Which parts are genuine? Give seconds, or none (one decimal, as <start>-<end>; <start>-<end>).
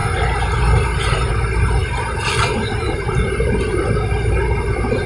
0.0-5.1